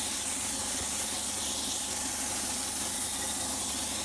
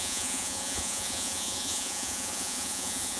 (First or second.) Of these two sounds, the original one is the first